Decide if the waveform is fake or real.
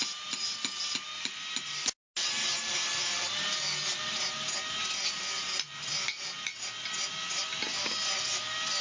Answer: real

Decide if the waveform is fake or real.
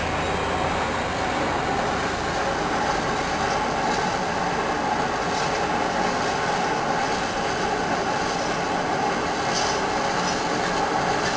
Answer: real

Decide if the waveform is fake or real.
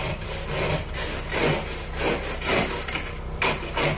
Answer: fake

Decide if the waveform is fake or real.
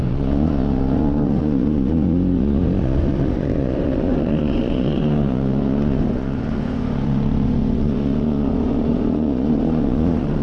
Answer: fake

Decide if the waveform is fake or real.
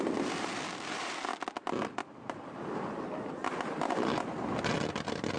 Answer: real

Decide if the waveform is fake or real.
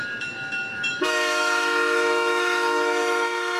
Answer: fake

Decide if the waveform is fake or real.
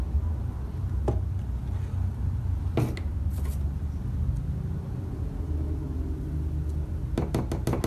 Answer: real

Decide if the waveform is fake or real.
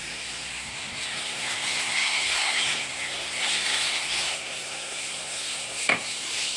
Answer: fake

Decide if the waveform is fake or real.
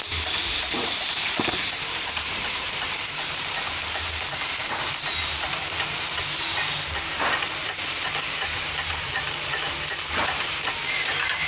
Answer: fake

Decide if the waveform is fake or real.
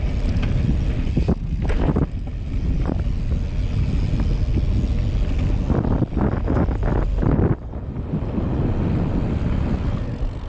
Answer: real